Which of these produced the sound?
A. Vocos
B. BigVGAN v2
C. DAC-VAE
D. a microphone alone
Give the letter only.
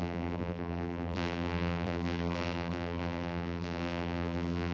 B